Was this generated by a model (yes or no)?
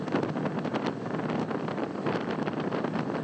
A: no